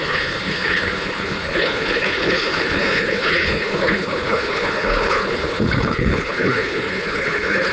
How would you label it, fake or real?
fake